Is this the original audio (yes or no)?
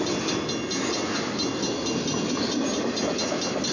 yes